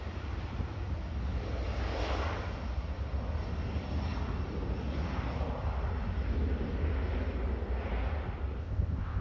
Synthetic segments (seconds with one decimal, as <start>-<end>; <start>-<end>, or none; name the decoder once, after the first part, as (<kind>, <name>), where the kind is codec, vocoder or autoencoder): 8.6-9.2 (codec, ZipCodec)